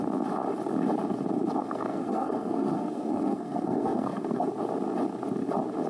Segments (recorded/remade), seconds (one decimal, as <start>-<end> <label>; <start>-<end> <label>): 0.0-1.6 recorded; 1.6-4.5 remade; 4.5-5.9 recorded